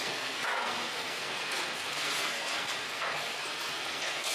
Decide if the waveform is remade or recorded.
remade